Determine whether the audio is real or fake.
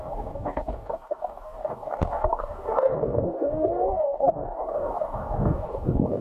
fake